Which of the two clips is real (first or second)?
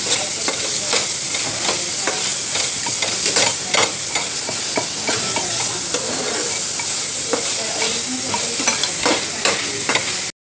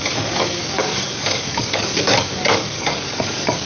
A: first